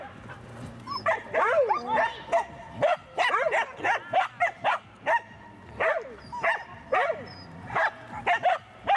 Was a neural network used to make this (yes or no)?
no